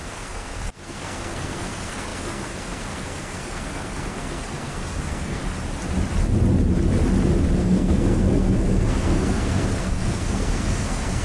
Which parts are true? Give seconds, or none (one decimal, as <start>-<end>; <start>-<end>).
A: 5.4-7.6

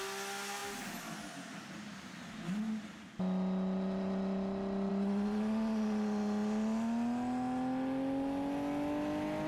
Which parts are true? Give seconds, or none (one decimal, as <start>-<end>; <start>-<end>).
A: 0.0-9.5

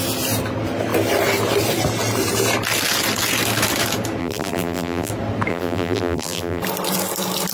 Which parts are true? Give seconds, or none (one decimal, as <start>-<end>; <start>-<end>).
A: 0.0-4.2; 5.1-5.5; 6.6-7.5

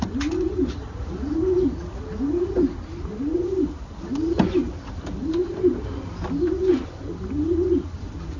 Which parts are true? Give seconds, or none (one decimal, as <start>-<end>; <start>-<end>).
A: 0.0-8.4

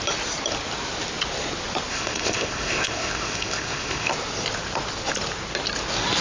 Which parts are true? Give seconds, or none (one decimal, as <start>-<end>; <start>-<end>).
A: 0.0-1.9; 4.1-6.2

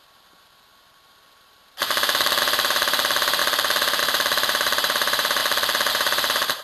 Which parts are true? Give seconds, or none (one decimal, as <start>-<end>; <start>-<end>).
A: 3.4-4.0; 5.4-5.9

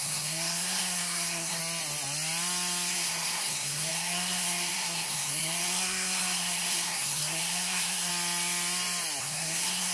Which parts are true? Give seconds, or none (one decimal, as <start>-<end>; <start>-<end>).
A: 1.6-2.9; 8.1-9.2